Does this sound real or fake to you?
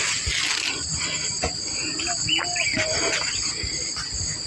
real